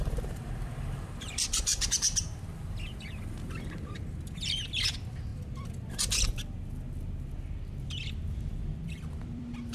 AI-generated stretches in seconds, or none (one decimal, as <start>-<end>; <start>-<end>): 0.0-1.7; 3.3-5.3; 7.8-9.7